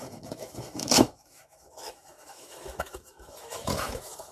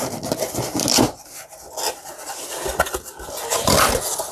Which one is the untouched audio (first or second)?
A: second